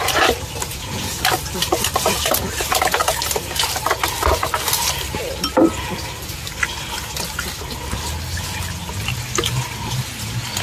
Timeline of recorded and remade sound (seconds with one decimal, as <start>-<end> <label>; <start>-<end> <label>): 0.0-0.7 recorded; 0.7-1.2 remade; 1.2-10.6 recorded